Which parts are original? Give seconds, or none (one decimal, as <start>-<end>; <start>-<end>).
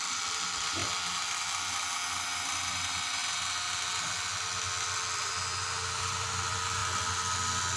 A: 0.8-2.1; 3.2-5.6